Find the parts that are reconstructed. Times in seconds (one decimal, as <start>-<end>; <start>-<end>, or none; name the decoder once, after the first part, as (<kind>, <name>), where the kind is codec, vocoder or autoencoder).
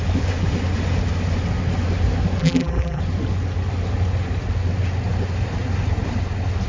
2.4-3.0 (vocoder, BigVGAN v2)